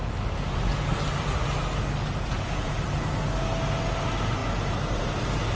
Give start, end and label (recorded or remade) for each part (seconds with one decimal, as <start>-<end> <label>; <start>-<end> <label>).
0.0-2.0 recorded; 2.0-2.8 remade; 2.8-5.5 recorded